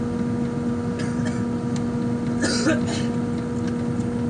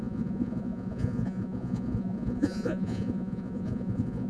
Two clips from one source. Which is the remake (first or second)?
second